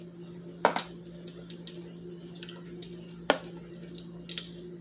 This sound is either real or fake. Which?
real